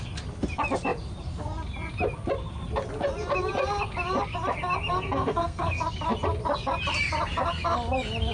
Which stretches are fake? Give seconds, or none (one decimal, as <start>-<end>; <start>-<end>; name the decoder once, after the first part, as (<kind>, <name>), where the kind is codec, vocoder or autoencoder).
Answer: 4.9-5.8 (codec, SNAC)

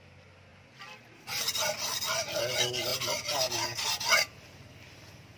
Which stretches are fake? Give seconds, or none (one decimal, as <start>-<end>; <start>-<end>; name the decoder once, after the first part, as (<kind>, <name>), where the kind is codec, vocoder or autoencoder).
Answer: none

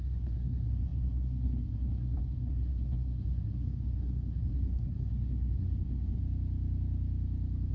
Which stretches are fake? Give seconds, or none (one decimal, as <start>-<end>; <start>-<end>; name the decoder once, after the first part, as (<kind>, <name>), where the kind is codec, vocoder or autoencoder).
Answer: 0.0-6.2 (codec, SNAC)

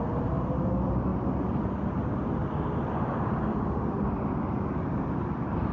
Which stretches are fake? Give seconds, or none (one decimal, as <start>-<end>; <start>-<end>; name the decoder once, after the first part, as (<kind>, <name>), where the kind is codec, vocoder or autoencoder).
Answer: none

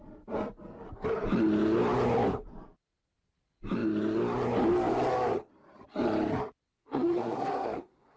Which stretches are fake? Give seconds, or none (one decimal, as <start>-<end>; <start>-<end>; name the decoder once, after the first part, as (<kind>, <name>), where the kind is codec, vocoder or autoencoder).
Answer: 6.7-8.2 (codec, SNAC)